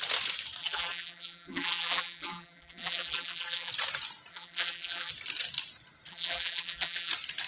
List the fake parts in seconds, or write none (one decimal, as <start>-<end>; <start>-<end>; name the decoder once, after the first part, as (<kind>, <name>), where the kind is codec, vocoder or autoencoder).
0.6-3.7 (vocoder, BigVGAN v2); 4.3-5.1; 6.1-7.1